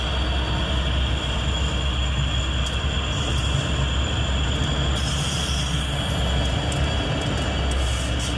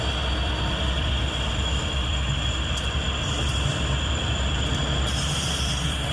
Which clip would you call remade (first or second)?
second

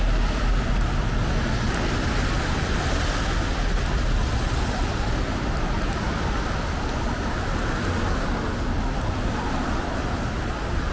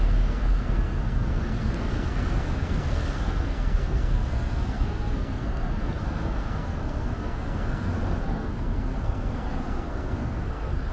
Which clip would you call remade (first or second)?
second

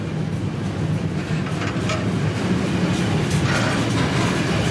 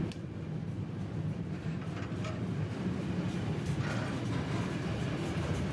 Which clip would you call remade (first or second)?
second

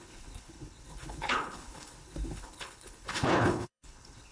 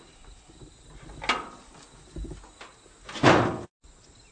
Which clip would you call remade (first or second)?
first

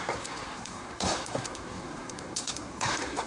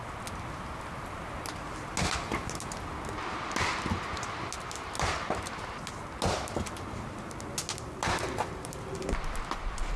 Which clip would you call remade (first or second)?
first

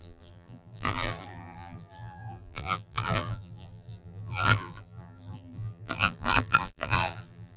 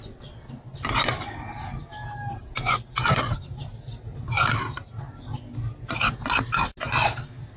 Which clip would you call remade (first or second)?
first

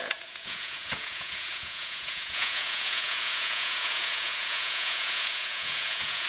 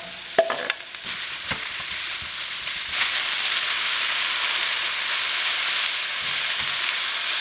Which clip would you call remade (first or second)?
first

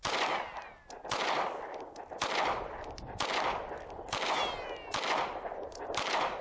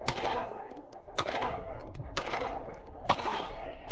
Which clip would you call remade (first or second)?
second